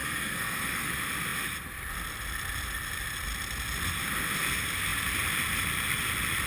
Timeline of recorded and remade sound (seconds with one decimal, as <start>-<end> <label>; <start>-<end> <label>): 0.0-0.9 remade; 0.9-6.5 recorded